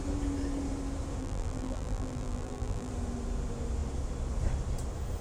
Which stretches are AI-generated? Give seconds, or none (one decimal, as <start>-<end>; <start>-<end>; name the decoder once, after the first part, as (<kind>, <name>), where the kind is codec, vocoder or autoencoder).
1.2-2.9 (vocoder, BigVGAN v2)